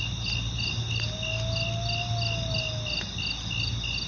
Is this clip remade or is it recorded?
recorded